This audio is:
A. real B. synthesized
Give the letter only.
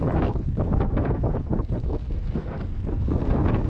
B